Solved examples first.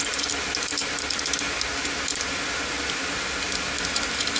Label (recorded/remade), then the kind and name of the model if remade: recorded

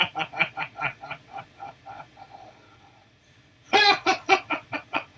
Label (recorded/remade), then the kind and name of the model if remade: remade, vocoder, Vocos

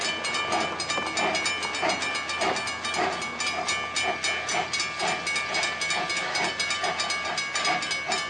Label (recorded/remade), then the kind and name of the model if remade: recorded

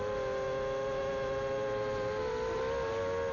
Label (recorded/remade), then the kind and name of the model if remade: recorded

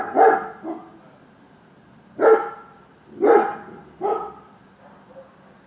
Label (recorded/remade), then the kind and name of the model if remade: recorded